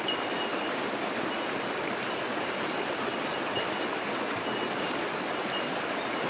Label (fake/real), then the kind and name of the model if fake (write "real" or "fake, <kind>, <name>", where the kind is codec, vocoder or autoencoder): real